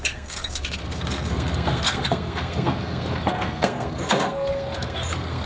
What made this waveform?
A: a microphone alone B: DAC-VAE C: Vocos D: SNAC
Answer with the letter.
D